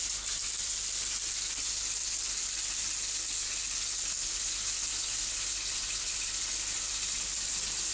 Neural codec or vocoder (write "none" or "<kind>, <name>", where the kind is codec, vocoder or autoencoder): none